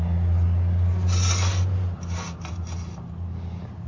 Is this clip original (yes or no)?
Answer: yes